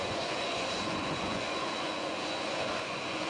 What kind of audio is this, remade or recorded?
remade